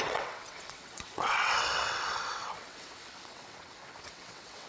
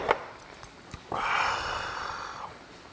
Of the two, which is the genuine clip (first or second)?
second